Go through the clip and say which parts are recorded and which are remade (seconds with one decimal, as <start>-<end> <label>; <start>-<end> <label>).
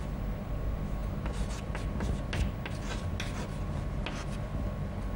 0.0-5.2 recorded